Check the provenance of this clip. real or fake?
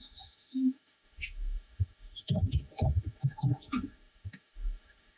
fake